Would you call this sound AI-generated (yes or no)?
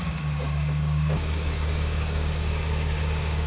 yes